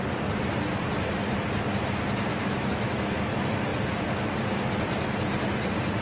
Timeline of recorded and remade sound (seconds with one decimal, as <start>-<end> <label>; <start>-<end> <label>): 0.0-2.3 recorded; 2.3-3.3 remade; 3.3-6.0 recorded